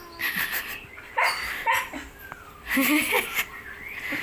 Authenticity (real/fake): real